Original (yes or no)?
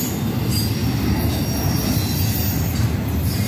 yes